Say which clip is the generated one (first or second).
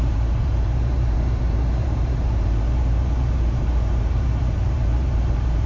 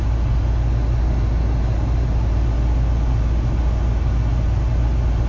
first